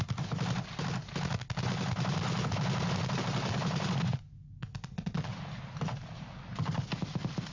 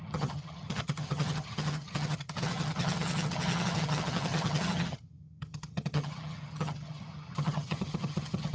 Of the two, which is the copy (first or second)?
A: second